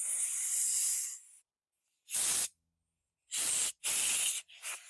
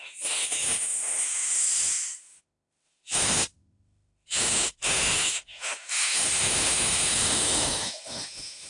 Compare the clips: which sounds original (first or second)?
first